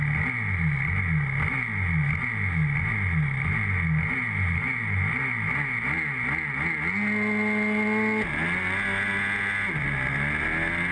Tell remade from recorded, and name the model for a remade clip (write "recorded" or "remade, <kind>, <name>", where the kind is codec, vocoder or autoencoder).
recorded